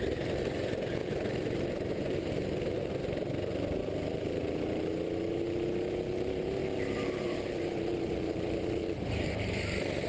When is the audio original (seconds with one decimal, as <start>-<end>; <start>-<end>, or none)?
0.0-1.0; 2.3-3.8; 4.4-6.6